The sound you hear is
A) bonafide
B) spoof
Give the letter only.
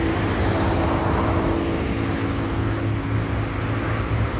A